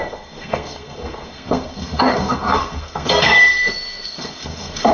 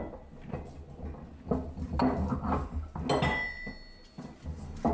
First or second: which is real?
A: second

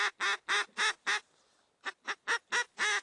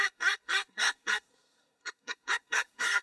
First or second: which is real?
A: first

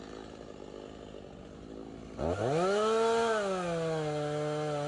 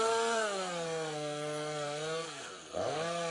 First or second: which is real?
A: first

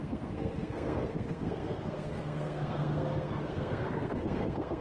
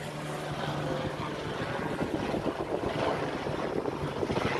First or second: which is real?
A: second